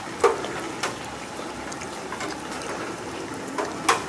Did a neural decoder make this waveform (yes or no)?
no